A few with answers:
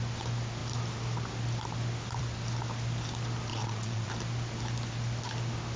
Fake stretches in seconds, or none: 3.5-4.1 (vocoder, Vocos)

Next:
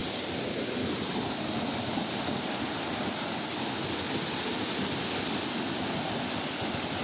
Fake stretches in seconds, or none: none

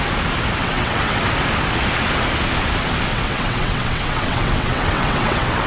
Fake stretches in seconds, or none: 0.6-1.2 (vocoder, WaveNeXt); 3.1-5.7

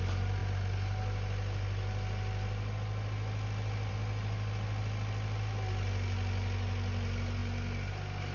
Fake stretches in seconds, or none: none

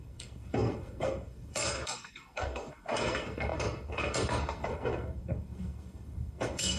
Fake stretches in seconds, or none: 0.0-6.8 (codec, SNAC)

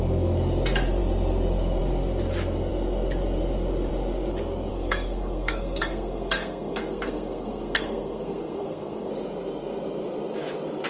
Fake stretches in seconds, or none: 4.7-9.1 (codec, SNAC)

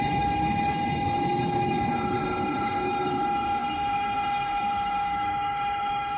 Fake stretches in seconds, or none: 0.0-6.2 (codec, HILCodec)

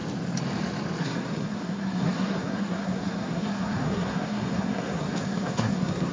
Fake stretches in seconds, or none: 1.0-6.1 (codec, SNAC)